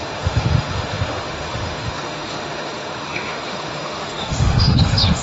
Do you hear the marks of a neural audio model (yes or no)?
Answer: yes